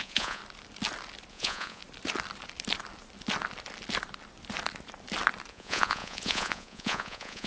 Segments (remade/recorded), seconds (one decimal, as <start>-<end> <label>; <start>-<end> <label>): 0.0-0.4 remade; 0.4-1.3 recorded; 1.3-1.8 remade; 1.8-5.5 recorded; 5.5-7.5 remade